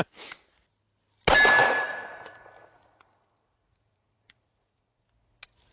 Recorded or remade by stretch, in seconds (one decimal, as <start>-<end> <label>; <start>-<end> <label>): 0.0-1.6 recorded; 1.6-5.0 remade; 5.0-5.7 recorded